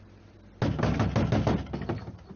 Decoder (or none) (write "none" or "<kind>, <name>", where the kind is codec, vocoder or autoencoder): none